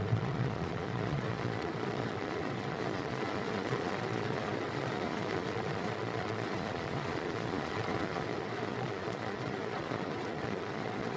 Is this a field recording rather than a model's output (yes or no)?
no